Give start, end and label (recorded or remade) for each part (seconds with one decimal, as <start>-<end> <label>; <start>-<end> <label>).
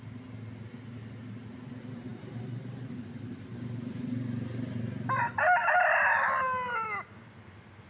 0.0-7.9 recorded